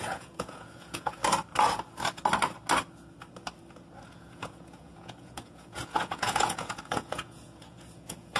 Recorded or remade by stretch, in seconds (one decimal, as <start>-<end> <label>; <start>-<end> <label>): 0.0-1.2 remade; 1.2-4.1 recorded; 4.1-8.4 remade